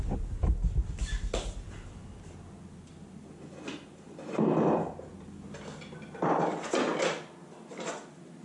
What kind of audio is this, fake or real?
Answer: real